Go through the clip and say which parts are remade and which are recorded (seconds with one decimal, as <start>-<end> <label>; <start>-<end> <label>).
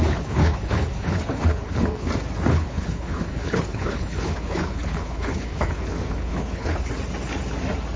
0.0-2.1 remade; 2.1-2.5 recorded; 2.5-6.9 remade; 6.9-8.0 recorded